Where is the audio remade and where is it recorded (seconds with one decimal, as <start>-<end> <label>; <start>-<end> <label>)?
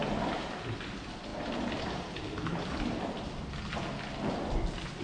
0.0-1.3 remade; 1.3-4.3 recorded; 4.3-5.0 remade